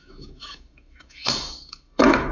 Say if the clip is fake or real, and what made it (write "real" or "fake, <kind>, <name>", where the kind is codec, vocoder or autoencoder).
fake, autoencoder, DAC-VAE